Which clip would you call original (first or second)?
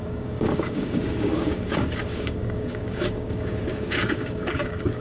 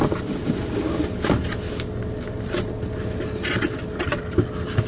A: second